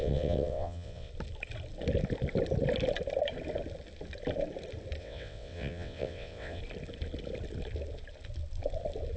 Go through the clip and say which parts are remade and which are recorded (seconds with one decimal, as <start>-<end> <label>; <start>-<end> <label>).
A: 0.0-1.1 remade; 1.1-5.0 recorded; 5.0-6.6 remade; 6.6-9.2 recorded